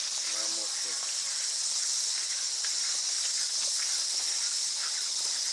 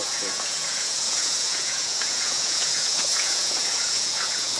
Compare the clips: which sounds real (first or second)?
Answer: first